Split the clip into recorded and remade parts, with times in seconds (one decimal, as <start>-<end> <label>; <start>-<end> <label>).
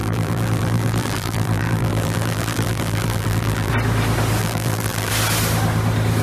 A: 0.0-3.7 remade; 3.7-4.4 recorded; 4.4-5.1 remade; 5.1-6.2 recorded